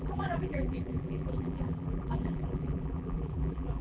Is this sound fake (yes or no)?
yes